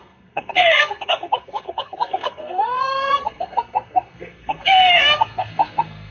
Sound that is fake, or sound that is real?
fake